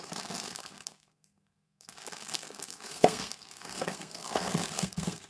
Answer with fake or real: fake